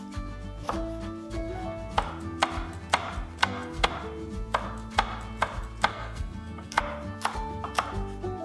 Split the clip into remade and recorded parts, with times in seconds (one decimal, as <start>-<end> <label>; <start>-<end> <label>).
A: 0.0-3.4 recorded; 3.4-3.9 remade; 3.9-5.9 recorded; 5.9-6.8 remade; 6.8-8.4 recorded